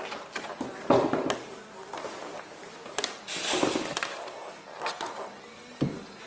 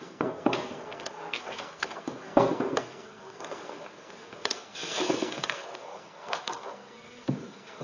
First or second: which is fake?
second